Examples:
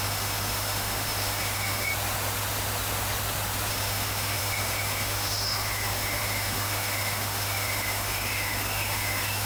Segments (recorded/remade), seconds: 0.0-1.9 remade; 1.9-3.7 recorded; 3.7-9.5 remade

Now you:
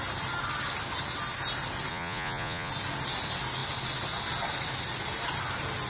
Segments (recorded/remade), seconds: 0.0-1.9 recorded; 1.9-2.7 remade; 2.7-5.9 recorded

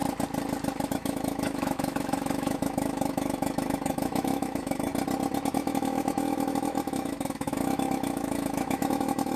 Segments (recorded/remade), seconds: 0.0-0.9 recorded; 0.9-4.9 remade; 4.9-5.5 recorded; 5.5-9.4 remade

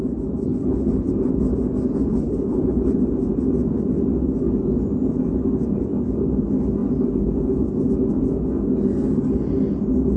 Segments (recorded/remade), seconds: 0.0-0.5 recorded; 0.5-1.1 remade; 1.1-2.1 recorded; 2.1-2.9 remade; 2.9-10.2 recorded

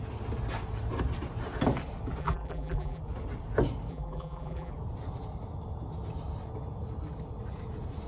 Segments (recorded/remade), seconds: 0.0-2.2 recorded; 2.2-3.0 remade; 3.0-3.9 recorded; 3.9-4.7 remade; 4.7-8.1 recorded

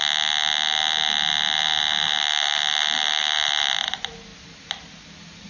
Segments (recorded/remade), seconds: 0.0-5.5 recorded